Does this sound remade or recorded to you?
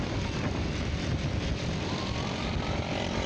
remade